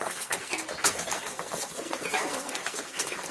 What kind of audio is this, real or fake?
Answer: fake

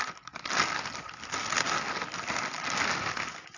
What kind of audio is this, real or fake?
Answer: real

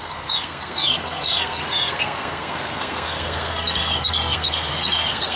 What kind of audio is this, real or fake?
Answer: fake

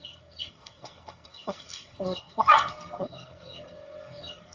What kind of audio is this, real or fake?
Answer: fake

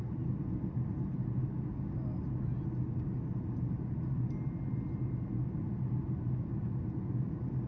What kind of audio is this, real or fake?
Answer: real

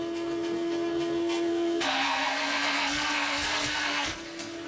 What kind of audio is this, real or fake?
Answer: fake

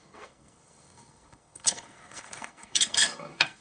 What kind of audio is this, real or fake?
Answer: fake